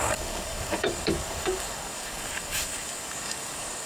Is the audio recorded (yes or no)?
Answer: no